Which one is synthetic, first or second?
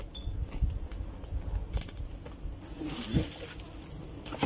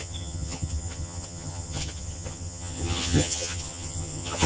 second